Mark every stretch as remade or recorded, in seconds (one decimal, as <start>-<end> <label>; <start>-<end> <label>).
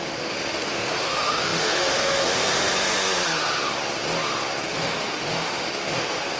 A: 0.0-2.7 remade; 2.7-4.6 recorded; 4.6-6.4 remade